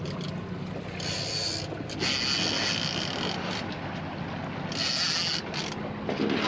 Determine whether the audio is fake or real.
real